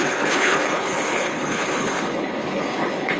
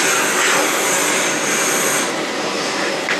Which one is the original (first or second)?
second